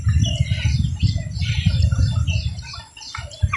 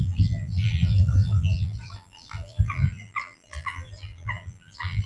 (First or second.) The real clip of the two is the first